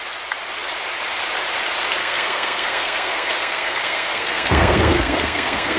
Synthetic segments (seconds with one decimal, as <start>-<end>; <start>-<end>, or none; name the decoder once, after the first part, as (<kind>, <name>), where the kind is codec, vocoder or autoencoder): 2.0-5.8 (codec, SNAC)